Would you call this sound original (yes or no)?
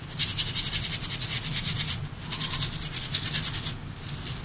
yes